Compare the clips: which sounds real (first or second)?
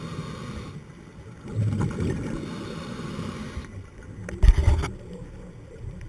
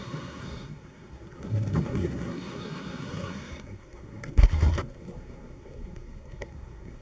first